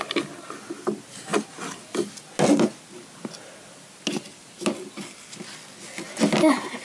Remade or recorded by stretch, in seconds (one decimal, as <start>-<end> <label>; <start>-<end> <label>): 0.0-6.8 recorded